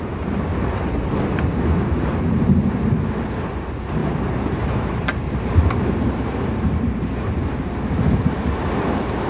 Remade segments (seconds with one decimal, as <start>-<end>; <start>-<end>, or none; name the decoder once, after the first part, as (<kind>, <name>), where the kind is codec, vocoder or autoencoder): 4.0-7.3 (vocoder, BigVGAN v2)